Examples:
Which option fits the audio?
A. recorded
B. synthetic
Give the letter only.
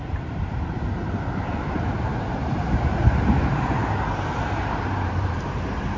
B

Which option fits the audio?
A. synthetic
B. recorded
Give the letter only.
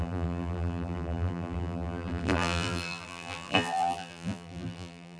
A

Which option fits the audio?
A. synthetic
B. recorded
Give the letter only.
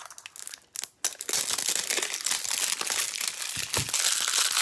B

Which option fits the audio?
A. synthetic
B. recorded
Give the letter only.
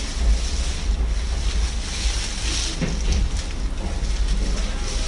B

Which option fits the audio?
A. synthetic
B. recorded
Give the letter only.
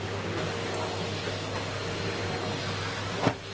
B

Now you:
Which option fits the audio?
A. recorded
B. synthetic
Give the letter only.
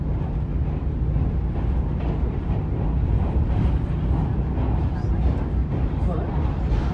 A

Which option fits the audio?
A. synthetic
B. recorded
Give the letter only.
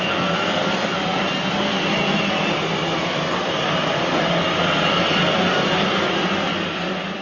A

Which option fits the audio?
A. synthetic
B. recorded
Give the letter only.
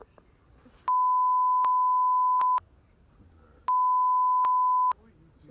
B